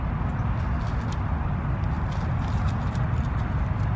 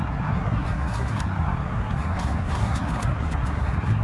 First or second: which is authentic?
first